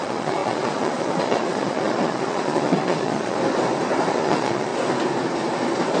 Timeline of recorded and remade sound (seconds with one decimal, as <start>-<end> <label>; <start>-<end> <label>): 0.0-3.4 remade; 3.4-4.1 recorded; 4.1-4.7 remade; 4.7-6.0 recorded